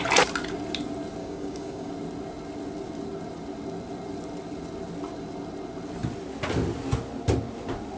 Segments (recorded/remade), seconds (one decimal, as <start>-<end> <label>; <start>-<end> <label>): 0.0-1.2 recorded; 1.2-1.9 remade; 1.9-8.0 recorded